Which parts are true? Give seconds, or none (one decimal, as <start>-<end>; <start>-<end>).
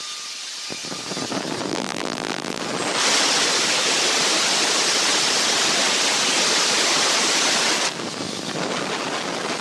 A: 0.0-1.7; 2.6-9.6